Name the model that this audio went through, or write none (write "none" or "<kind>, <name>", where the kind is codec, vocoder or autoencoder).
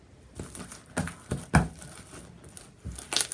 none